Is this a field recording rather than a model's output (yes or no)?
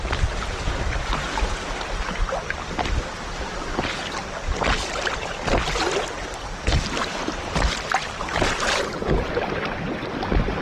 yes